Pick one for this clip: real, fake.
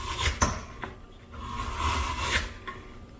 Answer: real